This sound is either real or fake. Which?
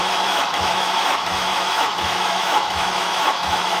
fake